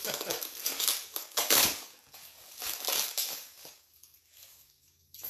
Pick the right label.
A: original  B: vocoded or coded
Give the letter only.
B